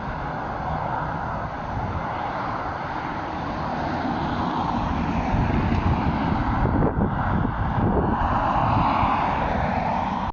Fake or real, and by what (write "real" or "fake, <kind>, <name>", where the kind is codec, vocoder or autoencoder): real